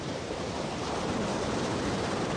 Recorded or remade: remade